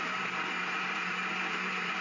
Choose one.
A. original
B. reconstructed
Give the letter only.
B